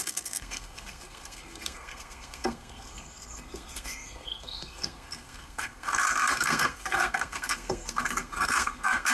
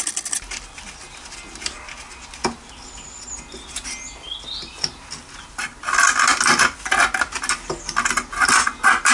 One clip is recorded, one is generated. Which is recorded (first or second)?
second